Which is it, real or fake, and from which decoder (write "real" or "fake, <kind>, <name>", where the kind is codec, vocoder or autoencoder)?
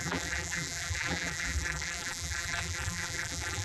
fake, vocoder, BigVGAN v2